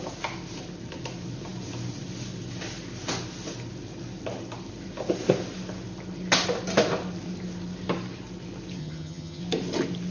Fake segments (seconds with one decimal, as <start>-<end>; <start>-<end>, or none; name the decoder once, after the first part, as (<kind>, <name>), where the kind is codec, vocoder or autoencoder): 8.8-9.4 (vocoder, HiFi-GAN)